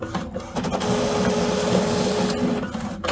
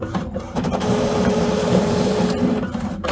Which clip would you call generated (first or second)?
second